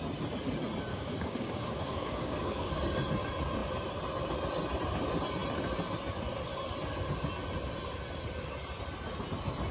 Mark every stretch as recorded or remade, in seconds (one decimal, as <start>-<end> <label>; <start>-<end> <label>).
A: 0.0-0.9 recorded; 0.9-2.8 remade; 2.8-9.7 recorded